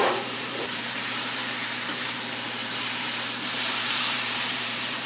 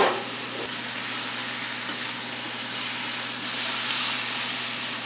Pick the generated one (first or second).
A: first